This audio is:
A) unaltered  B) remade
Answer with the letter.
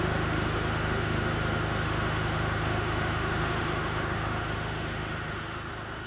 B